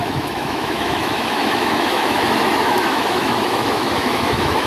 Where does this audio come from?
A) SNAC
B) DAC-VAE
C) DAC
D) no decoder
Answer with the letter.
B